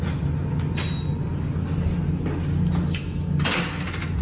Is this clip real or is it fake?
real